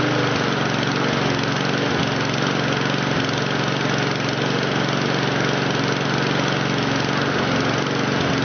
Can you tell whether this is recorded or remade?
recorded